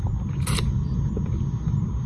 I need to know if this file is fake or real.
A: real